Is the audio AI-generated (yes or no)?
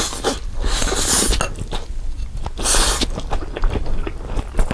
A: no